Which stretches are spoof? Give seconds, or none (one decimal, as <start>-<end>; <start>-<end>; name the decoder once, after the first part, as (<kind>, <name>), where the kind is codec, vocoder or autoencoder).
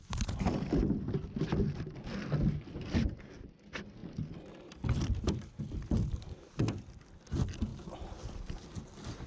none